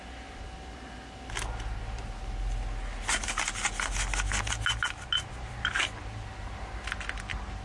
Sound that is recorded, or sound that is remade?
recorded